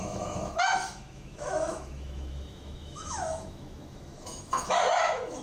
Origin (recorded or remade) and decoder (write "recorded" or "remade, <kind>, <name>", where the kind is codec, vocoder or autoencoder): remade, autoencoder, DAC-VAE